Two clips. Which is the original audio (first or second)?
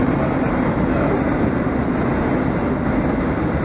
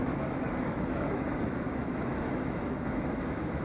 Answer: first